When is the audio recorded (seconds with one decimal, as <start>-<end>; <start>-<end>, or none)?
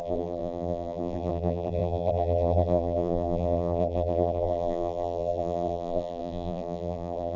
none